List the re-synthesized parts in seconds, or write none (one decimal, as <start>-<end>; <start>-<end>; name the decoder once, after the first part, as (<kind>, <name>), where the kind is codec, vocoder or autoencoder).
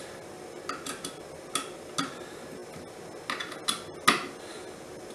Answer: none